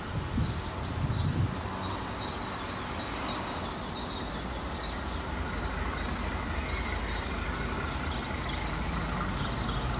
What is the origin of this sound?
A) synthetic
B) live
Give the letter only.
B